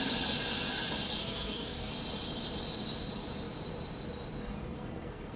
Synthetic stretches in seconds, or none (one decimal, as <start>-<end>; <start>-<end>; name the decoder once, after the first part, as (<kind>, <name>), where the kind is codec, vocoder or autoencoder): 1.2-1.9 (codec, SNAC); 4.4-5.4